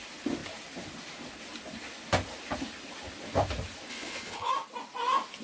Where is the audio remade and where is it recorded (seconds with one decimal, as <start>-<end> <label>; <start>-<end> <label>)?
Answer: 0.0-3.9 recorded; 3.9-4.5 remade; 4.5-5.4 recorded